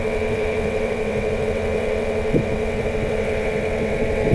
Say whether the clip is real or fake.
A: fake